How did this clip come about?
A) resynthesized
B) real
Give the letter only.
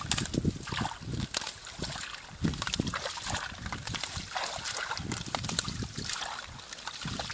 B